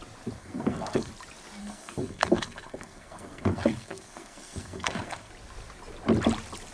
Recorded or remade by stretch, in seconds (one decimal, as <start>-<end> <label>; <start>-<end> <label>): 0.0-0.4 recorded; 0.4-1.1 remade; 1.1-1.6 recorded; 1.6-5.3 remade; 5.3-6.7 recorded